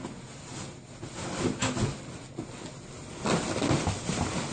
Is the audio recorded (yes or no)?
yes